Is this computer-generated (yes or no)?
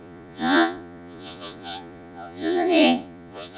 yes